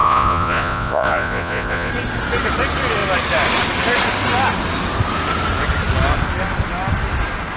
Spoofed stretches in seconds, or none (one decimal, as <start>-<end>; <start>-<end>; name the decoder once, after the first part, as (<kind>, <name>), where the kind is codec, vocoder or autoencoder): 0.0-1.9 (vocoder, Vocos)